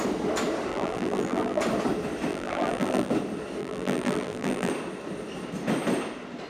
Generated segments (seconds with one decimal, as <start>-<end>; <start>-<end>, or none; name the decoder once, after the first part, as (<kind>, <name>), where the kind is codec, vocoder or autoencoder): 0.7-1.6 (vocoder, BigVGAN v2); 2.3-3.1; 3.6-4.7